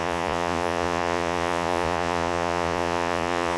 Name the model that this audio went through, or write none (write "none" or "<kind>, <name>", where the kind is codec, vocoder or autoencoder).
vocoder, Vocos